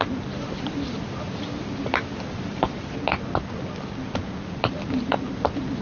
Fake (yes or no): no